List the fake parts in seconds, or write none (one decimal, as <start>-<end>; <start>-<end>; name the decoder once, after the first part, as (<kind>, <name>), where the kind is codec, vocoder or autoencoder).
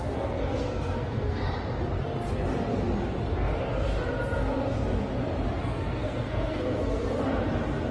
0.0-1.4 (codec, SNAC); 5.6-7.0